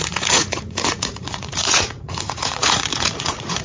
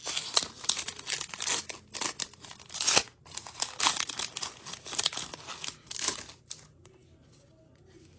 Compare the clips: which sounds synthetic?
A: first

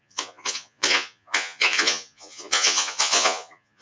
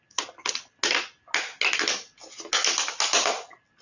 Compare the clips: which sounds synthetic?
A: first